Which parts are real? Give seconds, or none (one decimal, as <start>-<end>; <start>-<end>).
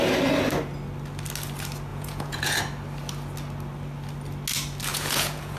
0.0-1.9; 2.6-4.9